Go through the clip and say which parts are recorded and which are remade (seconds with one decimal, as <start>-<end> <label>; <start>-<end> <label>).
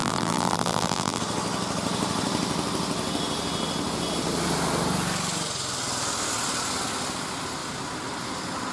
0.0-1.2 remade; 1.2-8.7 recorded